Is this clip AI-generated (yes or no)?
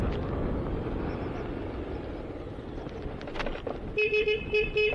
no